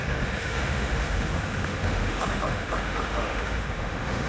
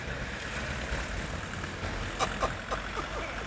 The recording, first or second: second